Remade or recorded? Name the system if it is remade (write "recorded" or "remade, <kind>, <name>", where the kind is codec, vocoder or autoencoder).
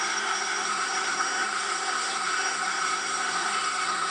remade, codec, SNAC